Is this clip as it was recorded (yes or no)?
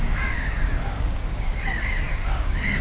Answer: no